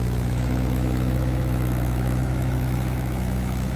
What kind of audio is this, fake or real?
fake